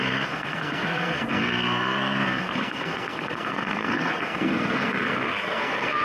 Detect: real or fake fake